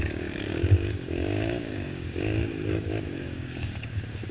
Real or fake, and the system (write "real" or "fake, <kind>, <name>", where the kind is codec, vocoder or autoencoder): fake, codec, DAC